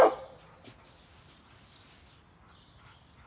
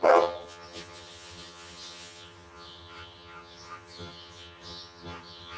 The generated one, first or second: second